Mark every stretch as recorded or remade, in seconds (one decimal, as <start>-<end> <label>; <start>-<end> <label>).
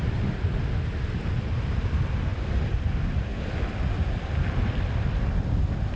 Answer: 0.0-6.0 recorded